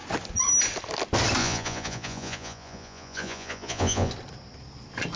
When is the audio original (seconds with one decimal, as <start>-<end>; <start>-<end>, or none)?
0.0-1.4; 4.1-5.2